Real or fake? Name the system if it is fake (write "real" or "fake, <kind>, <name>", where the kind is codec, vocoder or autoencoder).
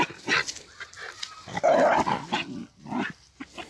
real